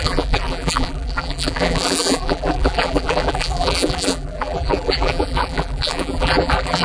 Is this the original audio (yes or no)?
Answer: no